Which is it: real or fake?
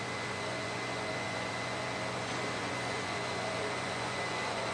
fake